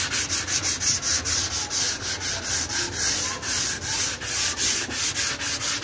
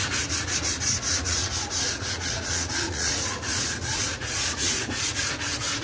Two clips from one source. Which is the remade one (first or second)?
second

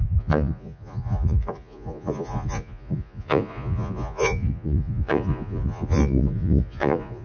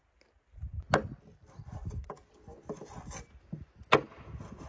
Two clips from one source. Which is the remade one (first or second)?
first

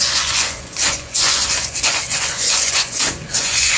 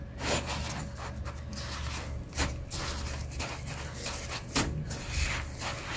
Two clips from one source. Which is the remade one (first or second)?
first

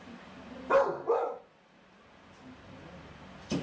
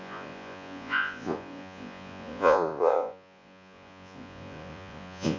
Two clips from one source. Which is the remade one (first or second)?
second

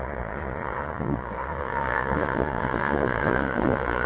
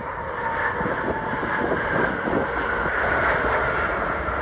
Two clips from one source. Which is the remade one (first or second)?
first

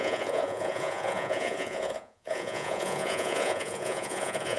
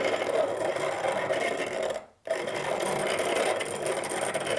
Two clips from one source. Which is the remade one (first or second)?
first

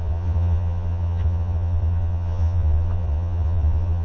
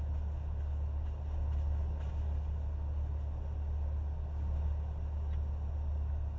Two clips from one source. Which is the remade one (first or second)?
first